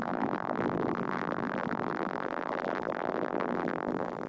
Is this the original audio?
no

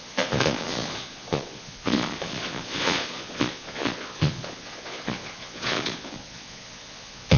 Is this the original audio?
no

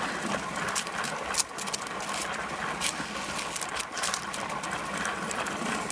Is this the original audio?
yes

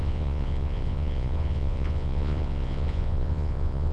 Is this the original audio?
no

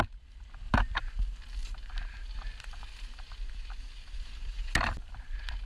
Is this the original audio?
yes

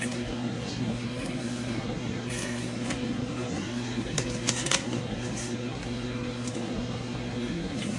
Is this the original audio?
no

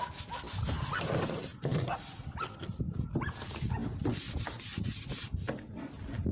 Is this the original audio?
yes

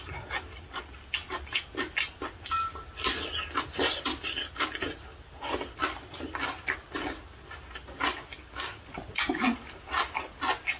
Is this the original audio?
yes